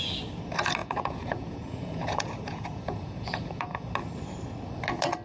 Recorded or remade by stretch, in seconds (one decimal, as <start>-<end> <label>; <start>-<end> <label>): 0.0-0.8 recorded; 0.8-3.9 remade; 3.9-5.2 recorded